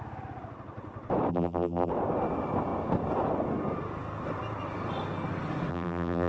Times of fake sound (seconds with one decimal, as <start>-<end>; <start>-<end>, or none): 1.3-1.9; 5.7-6.3